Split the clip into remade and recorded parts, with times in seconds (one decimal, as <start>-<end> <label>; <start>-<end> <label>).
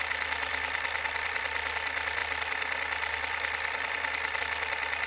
0.0-0.5 recorded; 0.5-1.4 remade; 1.4-2.2 recorded; 2.2-4.4 remade; 4.4-5.1 recorded